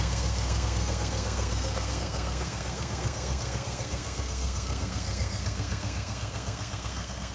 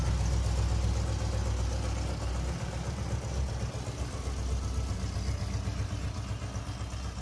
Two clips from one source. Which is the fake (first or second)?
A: first